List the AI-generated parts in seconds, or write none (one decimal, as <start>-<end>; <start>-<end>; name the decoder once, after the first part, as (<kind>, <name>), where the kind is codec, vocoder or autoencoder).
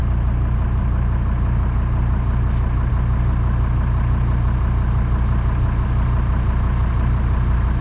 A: none